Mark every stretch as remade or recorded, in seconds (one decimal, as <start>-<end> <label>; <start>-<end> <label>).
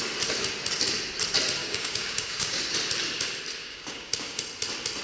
0.0-1.6 recorded; 1.6-2.6 remade; 2.6-3.6 recorded; 3.6-4.4 remade; 4.4-5.0 recorded